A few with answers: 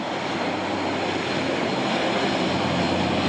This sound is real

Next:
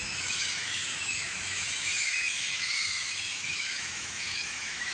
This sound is fake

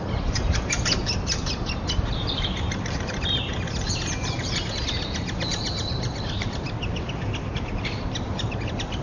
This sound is real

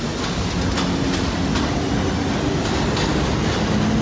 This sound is real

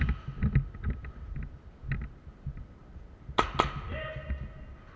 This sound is real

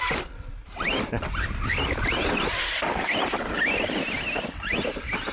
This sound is real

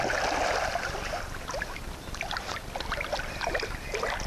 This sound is real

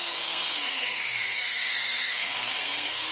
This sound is fake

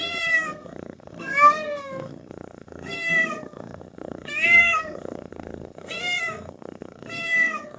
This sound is fake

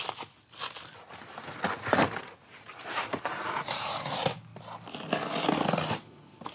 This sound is real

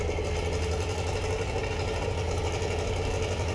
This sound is real